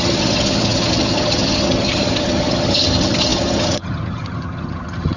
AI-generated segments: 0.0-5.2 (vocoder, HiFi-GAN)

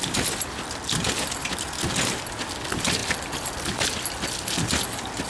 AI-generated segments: none

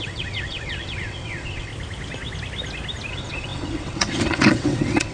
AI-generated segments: 0.0-1.7 (vocoder, WaveNeXt); 3.1-5.1

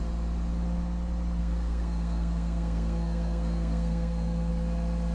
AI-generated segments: 1.4-4.5 (codec, SNAC)

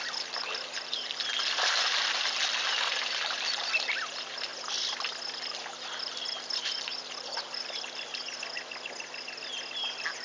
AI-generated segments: none